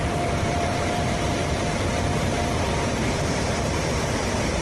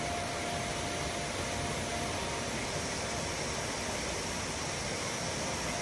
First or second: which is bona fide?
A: second